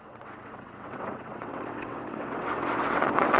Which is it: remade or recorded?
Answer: remade